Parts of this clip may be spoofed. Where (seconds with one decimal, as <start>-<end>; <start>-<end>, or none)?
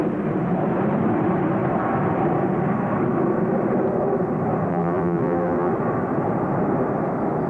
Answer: 4.7-5.7